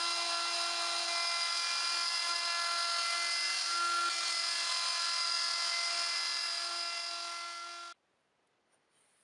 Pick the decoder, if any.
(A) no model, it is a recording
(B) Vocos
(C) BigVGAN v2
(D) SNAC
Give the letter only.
A